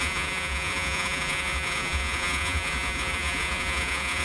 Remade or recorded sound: remade